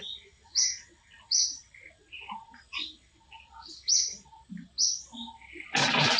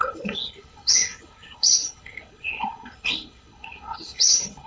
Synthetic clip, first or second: second